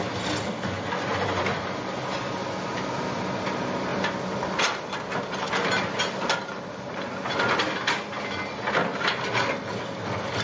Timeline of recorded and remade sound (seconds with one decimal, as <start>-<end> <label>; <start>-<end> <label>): 0.0-10.4 recorded